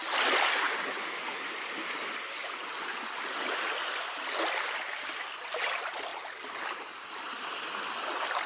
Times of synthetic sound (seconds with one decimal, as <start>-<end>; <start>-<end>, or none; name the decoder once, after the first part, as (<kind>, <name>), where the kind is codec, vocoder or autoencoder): none